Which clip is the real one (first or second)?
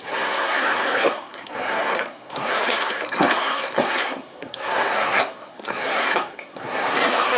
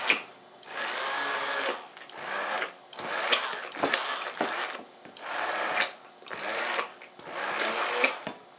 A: second